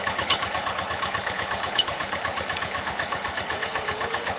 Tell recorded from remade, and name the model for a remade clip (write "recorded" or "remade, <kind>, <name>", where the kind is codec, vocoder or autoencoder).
remade, codec, HILCodec